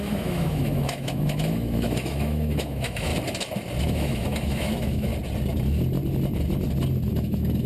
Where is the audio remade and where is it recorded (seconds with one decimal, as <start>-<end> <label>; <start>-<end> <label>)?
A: 0.0-3.1 remade; 3.1-3.8 recorded; 3.8-5.1 remade; 5.1-7.1 recorded; 7.1-7.7 remade